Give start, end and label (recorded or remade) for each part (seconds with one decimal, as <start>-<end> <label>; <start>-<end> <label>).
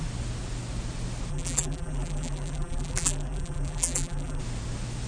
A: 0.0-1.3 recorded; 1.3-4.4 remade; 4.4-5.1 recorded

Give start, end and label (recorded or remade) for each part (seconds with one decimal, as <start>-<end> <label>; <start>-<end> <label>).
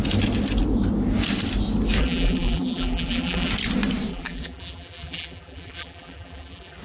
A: 0.0-2.0 recorded; 2.0-3.5 remade; 3.5-4.1 recorded; 4.1-6.8 remade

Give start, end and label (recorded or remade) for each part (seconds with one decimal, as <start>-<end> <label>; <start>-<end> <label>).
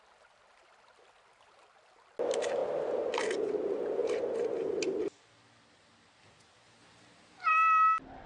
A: 0.0-6.8 recorded; 6.8-7.5 remade; 7.5-8.3 recorded